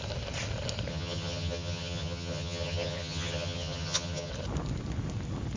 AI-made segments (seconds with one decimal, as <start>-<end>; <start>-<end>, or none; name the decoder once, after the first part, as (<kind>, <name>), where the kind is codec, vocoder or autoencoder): 0.9-4.3 (vocoder, HiFi-GAN)